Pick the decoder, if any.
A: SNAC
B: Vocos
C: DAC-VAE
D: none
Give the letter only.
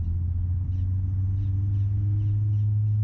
D